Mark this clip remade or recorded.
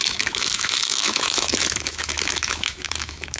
remade